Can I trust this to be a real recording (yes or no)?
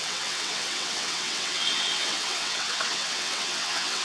no